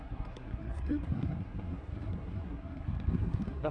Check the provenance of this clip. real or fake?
fake